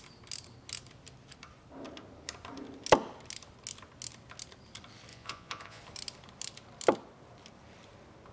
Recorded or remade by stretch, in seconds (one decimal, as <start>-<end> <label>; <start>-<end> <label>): 0.0-5.1 recorded; 5.1-5.8 remade; 5.8-8.3 recorded